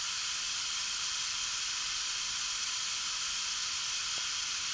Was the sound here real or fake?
fake